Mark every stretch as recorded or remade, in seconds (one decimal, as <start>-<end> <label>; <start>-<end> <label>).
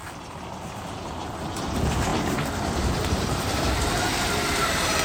0.0-1.5 recorded; 1.5-5.0 remade